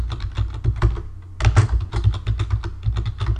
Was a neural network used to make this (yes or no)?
no